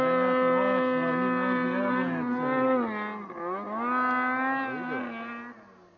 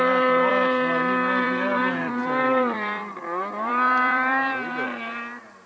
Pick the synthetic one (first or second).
second